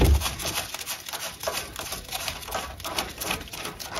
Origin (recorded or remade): recorded